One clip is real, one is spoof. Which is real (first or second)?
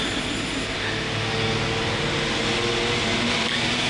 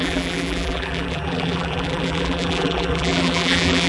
first